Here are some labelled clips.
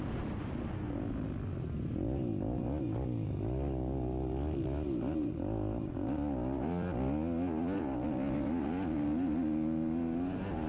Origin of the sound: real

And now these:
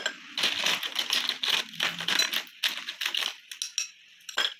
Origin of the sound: real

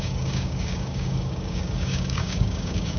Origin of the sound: fake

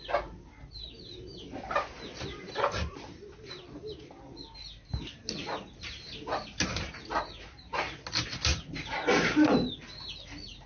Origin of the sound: real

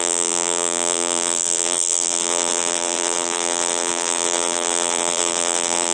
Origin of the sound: fake